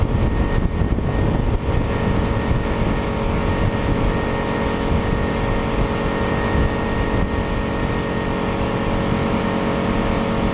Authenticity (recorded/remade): recorded